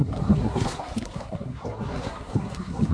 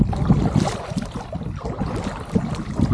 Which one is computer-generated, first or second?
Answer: first